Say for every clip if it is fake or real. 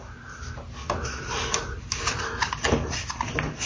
real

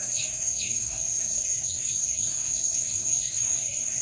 fake